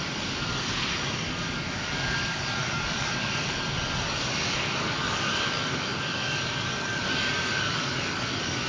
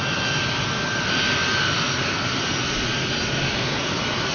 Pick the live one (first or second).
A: second